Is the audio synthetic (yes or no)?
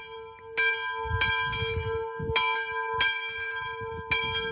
no